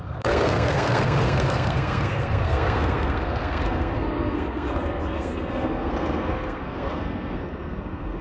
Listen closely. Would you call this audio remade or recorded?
remade